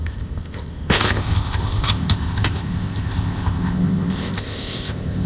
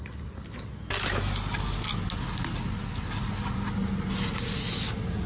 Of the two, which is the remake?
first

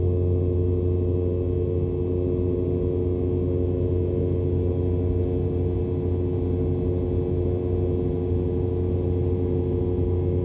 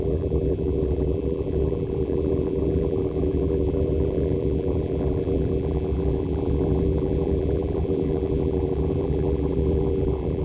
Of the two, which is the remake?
second